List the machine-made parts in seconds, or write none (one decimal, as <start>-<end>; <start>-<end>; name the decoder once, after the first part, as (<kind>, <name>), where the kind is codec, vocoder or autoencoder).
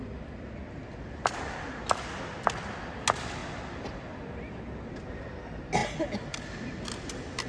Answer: none